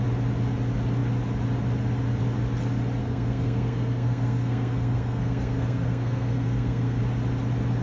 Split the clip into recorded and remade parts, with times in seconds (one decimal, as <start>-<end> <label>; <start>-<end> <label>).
0.0-3.0 recorded; 3.0-7.0 remade; 7.0-7.8 recorded